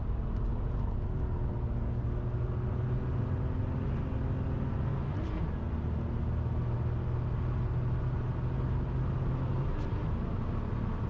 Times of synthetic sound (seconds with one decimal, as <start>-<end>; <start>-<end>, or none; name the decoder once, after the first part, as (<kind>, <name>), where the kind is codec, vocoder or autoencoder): none